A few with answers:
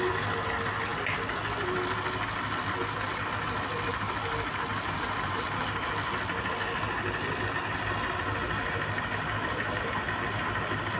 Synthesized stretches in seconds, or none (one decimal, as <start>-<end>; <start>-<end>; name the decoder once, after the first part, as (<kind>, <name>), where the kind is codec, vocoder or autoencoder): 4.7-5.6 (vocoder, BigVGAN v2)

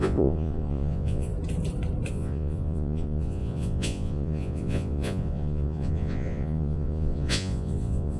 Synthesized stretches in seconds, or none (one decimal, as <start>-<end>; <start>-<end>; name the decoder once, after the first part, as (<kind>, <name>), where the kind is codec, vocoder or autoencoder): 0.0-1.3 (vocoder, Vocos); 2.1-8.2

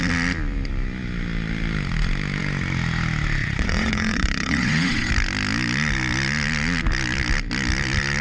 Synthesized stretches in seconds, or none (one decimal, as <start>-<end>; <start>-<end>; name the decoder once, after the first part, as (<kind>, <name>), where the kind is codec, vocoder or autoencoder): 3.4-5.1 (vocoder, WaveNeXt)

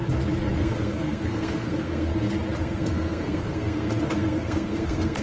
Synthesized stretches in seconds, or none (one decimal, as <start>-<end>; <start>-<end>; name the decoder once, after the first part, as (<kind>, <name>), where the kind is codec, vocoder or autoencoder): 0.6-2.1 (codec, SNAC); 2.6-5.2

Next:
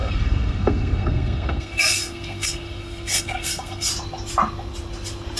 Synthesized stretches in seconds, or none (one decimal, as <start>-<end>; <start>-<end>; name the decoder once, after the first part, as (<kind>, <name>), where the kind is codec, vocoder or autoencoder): 0.0-3.9 (codec, SNAC)

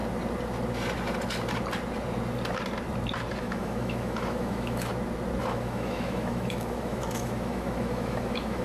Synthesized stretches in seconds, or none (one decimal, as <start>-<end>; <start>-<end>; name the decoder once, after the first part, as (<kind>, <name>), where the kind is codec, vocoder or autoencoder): 3.4-4.9 (autoencoder, DAC-VAE); 5.4-8.6

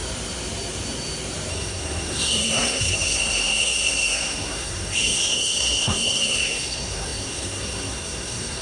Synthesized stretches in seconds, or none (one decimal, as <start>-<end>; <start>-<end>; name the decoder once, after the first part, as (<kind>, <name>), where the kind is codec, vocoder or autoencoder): 1.5-8.6 (codec, SNAC)

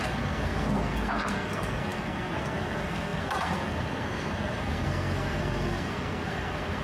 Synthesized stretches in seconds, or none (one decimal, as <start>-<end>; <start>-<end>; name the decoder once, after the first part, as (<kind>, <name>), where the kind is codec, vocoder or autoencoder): 0.0-6.8 (codec, SNAC)